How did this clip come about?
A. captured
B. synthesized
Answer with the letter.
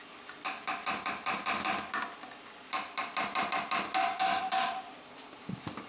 A